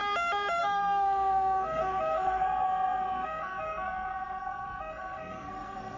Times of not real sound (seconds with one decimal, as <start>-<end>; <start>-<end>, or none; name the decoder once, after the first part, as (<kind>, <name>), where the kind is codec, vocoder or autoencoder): 0.6-6.0 (codec, SNAC)